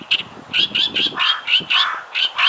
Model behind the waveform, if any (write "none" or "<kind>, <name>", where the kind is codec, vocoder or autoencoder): none